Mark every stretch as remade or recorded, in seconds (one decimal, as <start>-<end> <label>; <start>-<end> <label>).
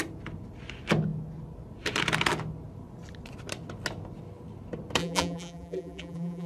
0.0-5.0 recorded; 5.0-6.5 remade